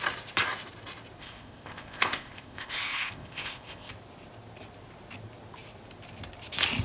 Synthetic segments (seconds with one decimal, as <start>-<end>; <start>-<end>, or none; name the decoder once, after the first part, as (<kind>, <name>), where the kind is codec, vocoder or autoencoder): 1.2-3.9 (codec, ZipCodec)